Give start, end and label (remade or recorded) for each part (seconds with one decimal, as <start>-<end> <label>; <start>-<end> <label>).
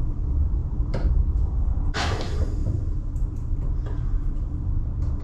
0.0-5.2 remade